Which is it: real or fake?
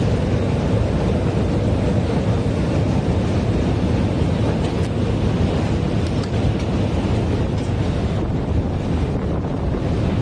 real